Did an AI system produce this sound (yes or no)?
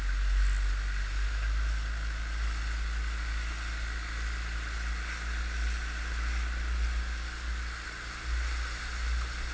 no